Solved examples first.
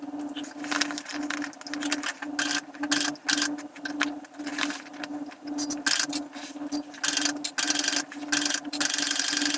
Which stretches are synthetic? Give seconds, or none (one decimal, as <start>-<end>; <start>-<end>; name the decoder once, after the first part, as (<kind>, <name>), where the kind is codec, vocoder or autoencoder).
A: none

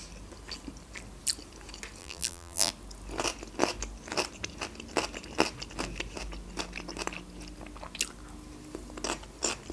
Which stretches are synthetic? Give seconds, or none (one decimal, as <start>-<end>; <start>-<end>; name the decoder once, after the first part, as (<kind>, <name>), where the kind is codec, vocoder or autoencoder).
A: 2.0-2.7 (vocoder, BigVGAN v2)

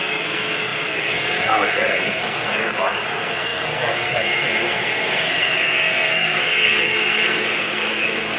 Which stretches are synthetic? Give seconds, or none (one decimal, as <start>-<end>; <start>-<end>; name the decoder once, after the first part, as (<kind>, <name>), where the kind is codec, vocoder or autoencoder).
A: 0.0-8.4 (codec, SNAC)